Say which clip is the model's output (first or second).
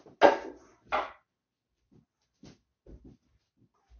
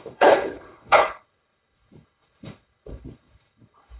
second